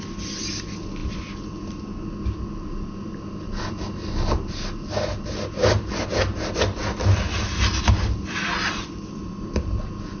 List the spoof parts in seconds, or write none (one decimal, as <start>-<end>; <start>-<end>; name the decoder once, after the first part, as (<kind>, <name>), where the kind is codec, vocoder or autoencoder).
none